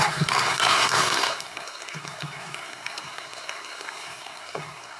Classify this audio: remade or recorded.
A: remade